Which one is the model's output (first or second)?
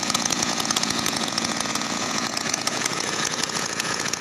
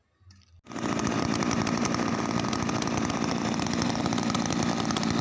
first